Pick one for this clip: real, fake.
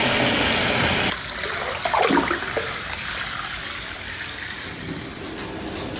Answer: real